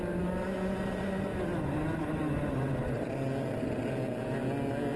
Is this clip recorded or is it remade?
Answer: recorded